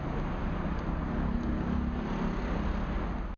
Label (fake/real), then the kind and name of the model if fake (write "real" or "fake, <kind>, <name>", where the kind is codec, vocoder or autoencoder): real